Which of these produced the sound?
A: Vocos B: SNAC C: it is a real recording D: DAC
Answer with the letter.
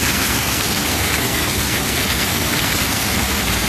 B